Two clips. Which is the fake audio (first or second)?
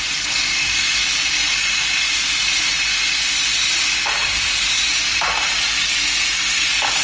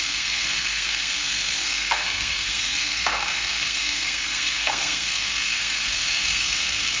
second